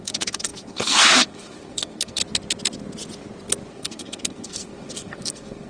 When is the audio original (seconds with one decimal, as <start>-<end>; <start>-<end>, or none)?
2.2-3.7